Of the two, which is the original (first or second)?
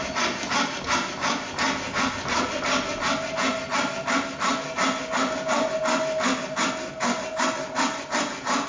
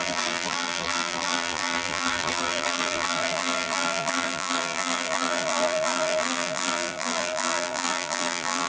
first